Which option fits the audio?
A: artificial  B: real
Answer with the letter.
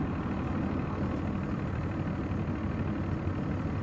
B